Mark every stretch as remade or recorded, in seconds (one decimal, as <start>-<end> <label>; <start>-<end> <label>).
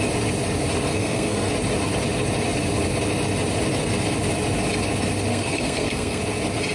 0.0-0.9 recorded; 0.9-1.5 remade; 1.5-5.3 recorded; 5.3-6.2 remade; 6.2-6.7 recorded